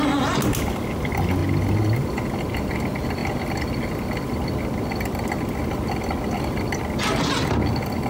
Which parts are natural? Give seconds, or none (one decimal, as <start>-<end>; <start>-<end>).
0.0-8.1